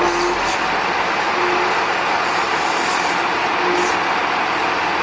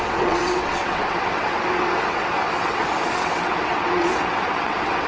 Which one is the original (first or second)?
first